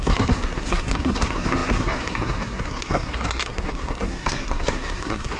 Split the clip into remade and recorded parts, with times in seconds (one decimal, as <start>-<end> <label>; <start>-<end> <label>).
0.0-5.4 remade